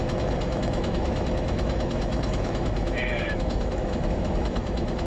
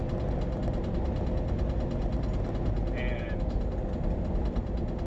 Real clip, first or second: second